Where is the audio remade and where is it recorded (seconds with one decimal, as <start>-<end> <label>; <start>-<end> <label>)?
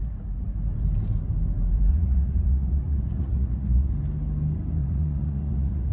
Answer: 0.0-1.9 recorded; 1.9-3.9 remade; 3.9-4.8 recorded; 4.8-5.9 remade